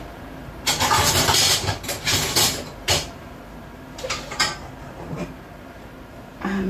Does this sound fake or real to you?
fake